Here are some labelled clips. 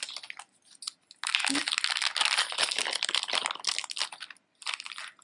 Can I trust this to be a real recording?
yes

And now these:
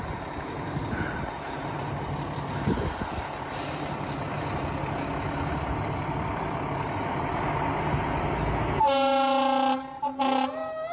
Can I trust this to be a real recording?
yes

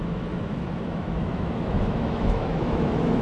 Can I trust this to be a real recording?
no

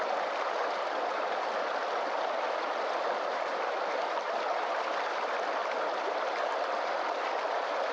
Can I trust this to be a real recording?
yes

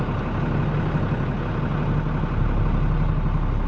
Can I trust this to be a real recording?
yes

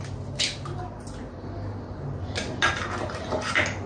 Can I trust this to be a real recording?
yes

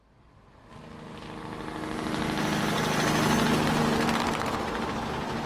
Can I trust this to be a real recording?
yes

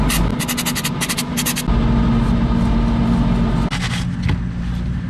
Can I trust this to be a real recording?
yes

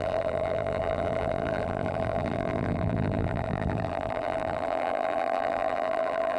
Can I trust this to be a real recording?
no